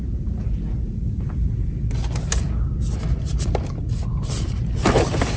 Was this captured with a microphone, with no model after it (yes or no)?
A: yes